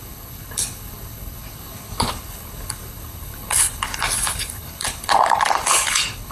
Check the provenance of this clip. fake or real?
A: fake